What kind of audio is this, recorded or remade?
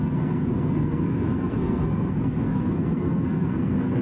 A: remade